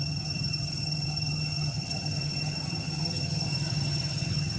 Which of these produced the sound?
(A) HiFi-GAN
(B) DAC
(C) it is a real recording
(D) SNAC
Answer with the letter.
A